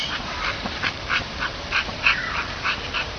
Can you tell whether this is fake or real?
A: fake